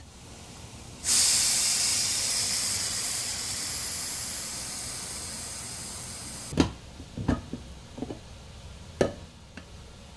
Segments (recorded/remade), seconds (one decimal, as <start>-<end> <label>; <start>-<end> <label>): 0.0-1.9 recorded; 1.9-3.7 remade; 3.7-10.2 recorded